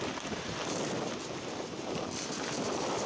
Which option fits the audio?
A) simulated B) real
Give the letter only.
B